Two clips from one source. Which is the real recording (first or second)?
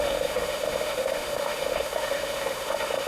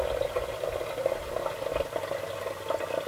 second